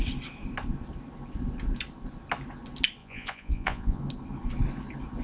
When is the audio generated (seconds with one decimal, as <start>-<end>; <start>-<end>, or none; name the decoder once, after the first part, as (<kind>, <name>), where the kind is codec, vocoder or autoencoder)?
3.0-4.0 (vocoder, Vocos)